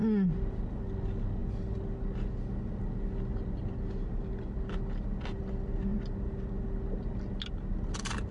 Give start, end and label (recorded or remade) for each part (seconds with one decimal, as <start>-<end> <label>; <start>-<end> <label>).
0.0-8.3 recorded

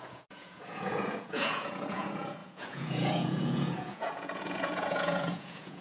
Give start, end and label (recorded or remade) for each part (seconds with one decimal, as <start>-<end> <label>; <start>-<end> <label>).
0.0-5.8 remade

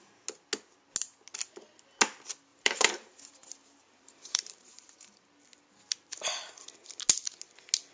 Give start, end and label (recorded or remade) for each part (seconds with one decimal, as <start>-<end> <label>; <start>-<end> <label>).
0.0-2.5 recorded; 2.5-5.2 remade; 5.2-7.9 recorded

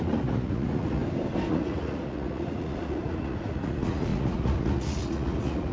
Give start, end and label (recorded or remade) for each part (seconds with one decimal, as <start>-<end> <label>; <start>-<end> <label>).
0.0-1.0 remade; 1.0-1.5 recorded; 1.5-5.7 remade

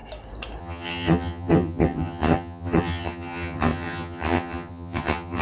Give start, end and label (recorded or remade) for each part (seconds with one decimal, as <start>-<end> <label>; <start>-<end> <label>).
0.0-0.6 recorded; 0.6-5.4 remade

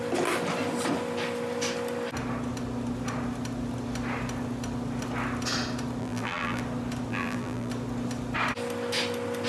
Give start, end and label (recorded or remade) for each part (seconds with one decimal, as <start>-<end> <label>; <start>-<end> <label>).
0.0-6.0 recorded; 6.0-6.6 remade; 6.6-7.1 recorded; 7.1-7.7 remade; 7.7-9.5 recorded